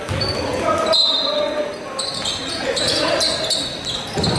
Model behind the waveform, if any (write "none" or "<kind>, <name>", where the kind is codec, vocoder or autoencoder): none